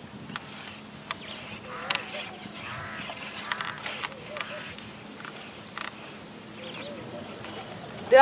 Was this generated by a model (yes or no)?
no